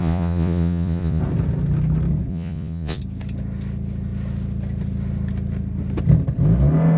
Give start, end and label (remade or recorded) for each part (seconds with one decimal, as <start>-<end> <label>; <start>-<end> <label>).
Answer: 0.0-1.2 remade; 1.2-2.3 recorded; 2.3-3.0 remade; 3.0-7.0 recorded